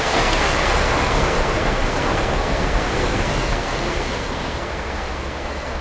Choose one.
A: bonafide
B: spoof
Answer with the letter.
B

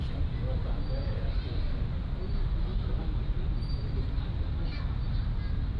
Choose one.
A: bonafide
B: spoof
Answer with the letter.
A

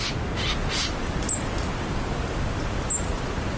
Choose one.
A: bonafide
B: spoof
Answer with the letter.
A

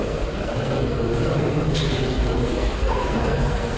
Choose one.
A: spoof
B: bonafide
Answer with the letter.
A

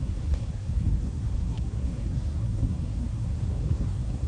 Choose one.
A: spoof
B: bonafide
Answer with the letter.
A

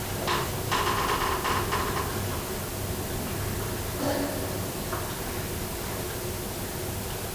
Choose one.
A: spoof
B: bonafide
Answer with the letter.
B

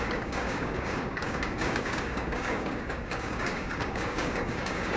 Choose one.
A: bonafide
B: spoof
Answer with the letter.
B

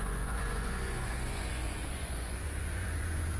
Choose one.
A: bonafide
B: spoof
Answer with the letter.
B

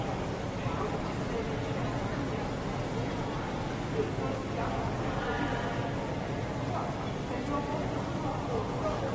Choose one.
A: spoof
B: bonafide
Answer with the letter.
B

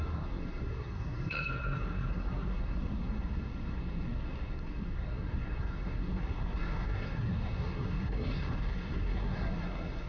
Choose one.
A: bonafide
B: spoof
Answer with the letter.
B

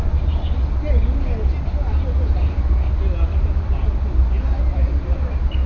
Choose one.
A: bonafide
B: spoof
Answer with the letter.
A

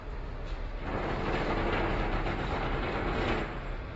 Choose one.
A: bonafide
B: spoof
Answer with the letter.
A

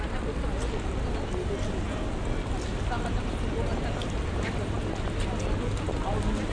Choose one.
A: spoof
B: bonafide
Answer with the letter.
B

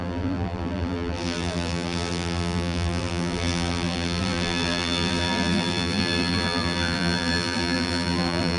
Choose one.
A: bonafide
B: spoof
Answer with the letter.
B